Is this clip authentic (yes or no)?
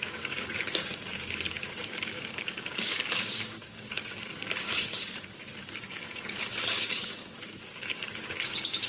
no